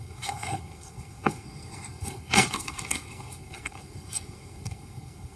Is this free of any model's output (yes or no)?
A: no